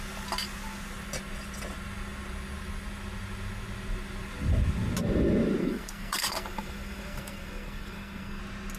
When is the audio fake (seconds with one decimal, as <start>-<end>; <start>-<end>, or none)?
5.6-8.4